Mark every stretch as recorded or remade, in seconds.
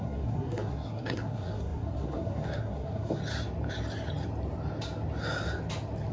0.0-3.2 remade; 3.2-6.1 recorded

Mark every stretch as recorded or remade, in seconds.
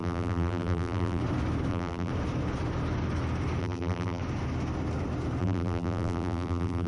0.0-1.2 remade; 1.2-1.7 recorded; 1.7-2.1 remade; 2.1-3.6 recorded; 3.6-4.2 remade; 4.2-5.4 recorded; 5.4-6.9 remade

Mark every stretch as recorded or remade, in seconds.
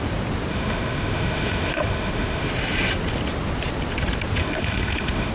0.0-0.5 recorded; 0.5-2.5 remade; 2.5-4.4 recorded; 4.4-5.3 remade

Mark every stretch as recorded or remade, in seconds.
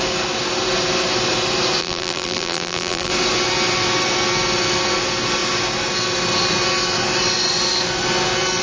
0.0-1.8 recorded; 1.8-3.1 remade; 3.1-8.6 recorded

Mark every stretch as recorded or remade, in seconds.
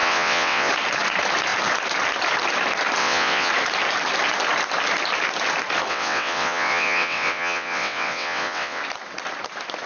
0.0-0.7 remade; 0.7-3.0 recorded; 3.0-3.5 remade; 3.5-5.9 recorded; 5.9-8.8 remade; 8.8-9.9 recorded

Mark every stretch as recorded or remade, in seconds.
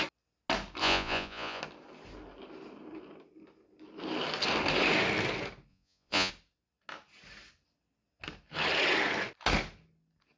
0.0-0.8 recorded; 0.8-1.6 remade; 1.6-5.7 recorded; 5.7-6.3 remade; 6.3-10.4 recorded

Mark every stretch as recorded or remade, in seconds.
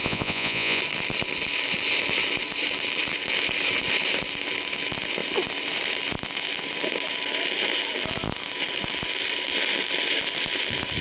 0.0-0.8 remade; 0.8-11.0 recorded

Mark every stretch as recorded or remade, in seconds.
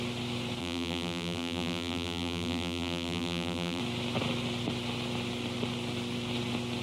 0.0-0.6 recorded; 0.6-3.8 remade; 3.8-6.8 recorded